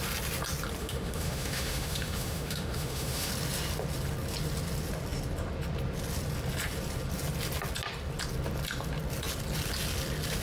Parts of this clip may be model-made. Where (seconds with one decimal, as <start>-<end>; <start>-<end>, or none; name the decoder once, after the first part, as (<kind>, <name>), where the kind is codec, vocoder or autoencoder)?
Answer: 0.8-3.3 (autoencoder, DAC-VAE)